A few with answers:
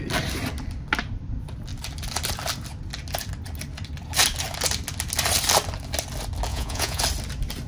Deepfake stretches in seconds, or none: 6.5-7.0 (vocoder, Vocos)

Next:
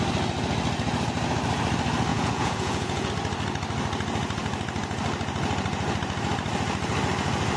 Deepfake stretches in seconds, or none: 2.1-3.1 (vocoder, Vocos)

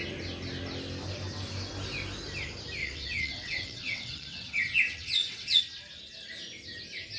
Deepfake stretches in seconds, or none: 2.8-5.6 (vocoder, WaveNeXt)

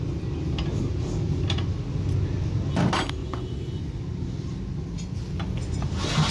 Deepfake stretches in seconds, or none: 3.2-3.8 (vocoder, Vocos)

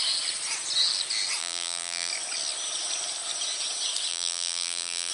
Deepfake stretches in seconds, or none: 1.4-2.1 (vocoder, BigVGAN v2); 4.1-5.1

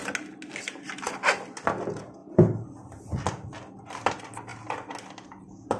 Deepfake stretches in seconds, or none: none